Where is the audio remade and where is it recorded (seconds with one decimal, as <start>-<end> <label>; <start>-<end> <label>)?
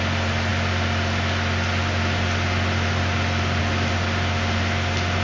0.0-5.2 recorded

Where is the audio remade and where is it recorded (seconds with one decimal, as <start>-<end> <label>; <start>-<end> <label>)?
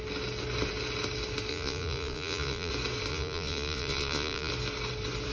0.0-1.5 recorded; 1.5-2.7 remade; 2.7-3.1 recorded; 3.1-4.5 remade; 4.5-5.3 recorded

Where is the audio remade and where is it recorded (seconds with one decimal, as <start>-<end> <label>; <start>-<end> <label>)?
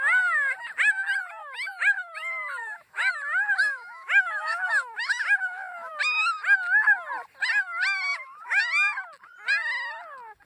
0.0-1.4 recorded; 1.4-3.1 remade; 3.1-3.6 recorded; 3.6-5.9 remade; 5.9-8.1 recorded; 8.1-8.6 remade; 8.6-10.5 recorded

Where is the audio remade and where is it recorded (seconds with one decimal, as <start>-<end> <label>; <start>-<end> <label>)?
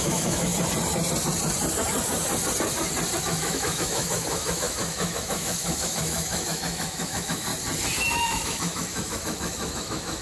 0.0-0.5 remade; 0.5-3.2 recorded; 3.2-7.5 remade; 7.5-8.1 recorded; 8.1-10.2 remade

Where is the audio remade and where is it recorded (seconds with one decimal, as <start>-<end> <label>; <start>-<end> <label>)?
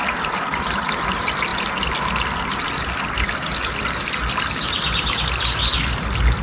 0.0-6.4 recorded